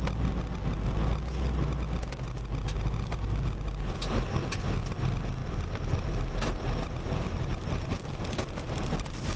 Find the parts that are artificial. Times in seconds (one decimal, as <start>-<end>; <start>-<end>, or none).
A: 5.4-8.0